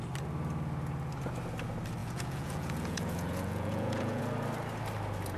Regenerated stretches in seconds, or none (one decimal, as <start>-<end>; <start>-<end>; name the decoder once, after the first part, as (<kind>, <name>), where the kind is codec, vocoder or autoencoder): 2.0-4.2 (vocoder, Vocos)